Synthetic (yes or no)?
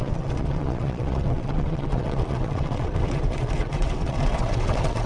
yes